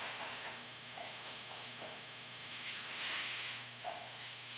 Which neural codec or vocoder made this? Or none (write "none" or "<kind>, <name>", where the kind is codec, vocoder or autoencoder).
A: autoencoder, DAC-VAE